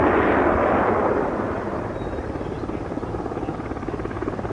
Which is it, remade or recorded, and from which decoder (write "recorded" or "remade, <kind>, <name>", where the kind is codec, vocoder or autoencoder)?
recorded